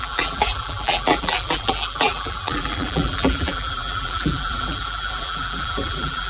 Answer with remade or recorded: remade